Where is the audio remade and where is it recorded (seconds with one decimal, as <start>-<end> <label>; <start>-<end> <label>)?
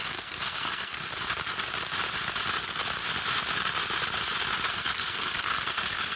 0.0-1.1 remade; 1.1-4.7 recorded; 4.7-6.2 remade